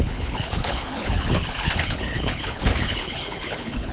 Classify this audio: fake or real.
fake